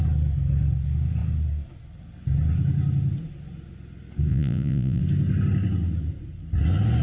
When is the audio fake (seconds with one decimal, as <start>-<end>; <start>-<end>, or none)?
4.3-5.0